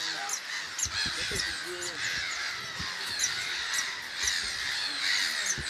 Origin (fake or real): real